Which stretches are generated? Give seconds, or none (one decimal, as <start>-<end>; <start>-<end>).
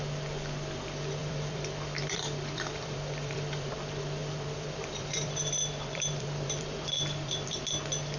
1.2-3.7; 4.2-7.6